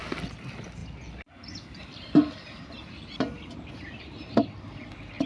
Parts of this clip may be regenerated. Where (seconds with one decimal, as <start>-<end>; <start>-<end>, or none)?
none